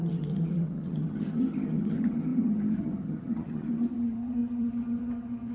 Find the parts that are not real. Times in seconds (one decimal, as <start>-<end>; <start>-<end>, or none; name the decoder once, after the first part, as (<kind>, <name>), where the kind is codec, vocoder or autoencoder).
0.0-5.5 (vocoder, HiFi-GAN)

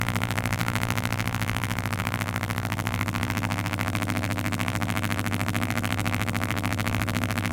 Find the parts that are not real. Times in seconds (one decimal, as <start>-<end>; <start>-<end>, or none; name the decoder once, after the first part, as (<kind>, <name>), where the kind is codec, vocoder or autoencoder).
0.0-7.5 (vocoder, BigVGAN v2)

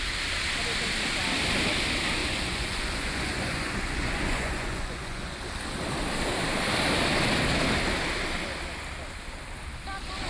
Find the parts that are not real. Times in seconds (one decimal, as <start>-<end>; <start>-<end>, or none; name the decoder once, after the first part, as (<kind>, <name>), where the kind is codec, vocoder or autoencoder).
2.2-5.4 (vocoder, Vocos)

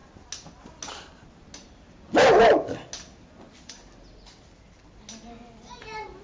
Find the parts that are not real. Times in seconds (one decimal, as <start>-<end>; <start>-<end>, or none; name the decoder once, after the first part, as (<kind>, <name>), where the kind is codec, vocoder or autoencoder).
none

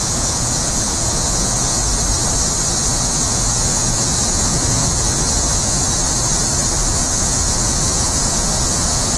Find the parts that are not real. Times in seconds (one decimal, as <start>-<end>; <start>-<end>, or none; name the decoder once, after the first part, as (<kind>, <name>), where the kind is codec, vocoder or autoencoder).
0.0-1.9 (vocoder, Vocos); 2.8-6.0; 6.8-9.2

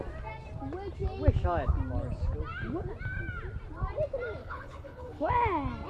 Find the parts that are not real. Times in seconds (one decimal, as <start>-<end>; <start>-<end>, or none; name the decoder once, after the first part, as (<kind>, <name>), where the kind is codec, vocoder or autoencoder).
4.4-5.3 (codec, HILCodec)

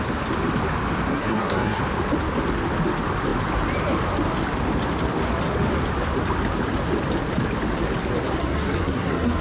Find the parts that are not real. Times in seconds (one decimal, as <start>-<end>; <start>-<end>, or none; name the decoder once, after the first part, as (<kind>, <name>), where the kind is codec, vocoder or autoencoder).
1.1-1.8 (codec, SNAC); 8.4-9.4